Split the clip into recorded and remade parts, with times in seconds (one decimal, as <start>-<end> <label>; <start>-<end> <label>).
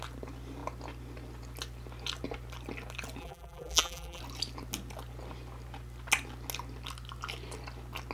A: 0.0-3.2 recorded; 3.2-4.2 remade; 4.2-8.1 recorded